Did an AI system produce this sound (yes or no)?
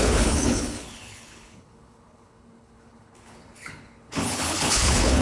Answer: yes